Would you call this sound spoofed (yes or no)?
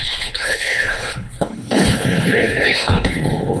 yes